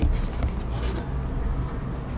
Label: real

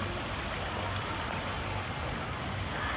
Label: real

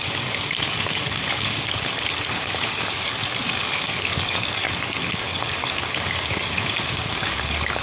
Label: fake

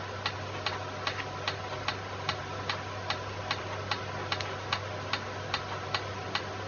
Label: real